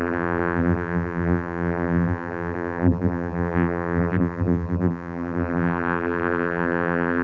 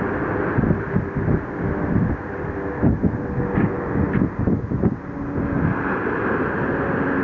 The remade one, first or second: first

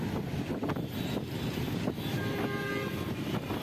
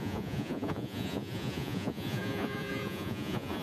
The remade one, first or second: second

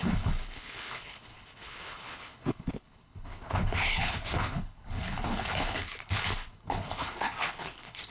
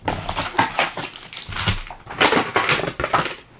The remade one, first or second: first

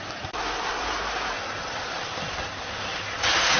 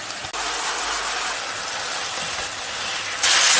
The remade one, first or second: first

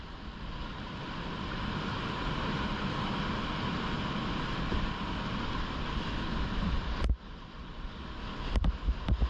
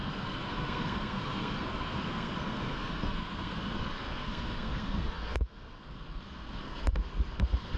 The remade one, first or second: second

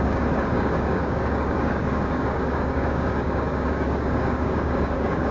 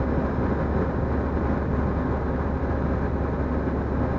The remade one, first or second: first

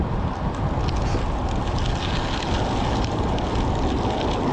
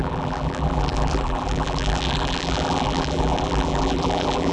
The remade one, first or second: second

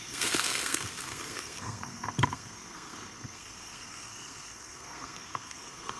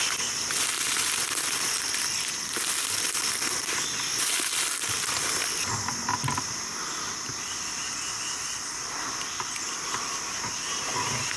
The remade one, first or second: first